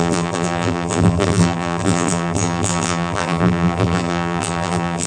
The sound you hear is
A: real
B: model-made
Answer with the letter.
B